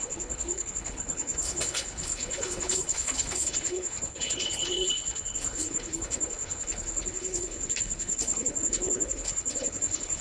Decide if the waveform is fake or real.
fake